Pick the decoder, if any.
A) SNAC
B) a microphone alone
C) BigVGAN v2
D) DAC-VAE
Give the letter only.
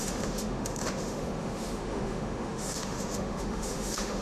D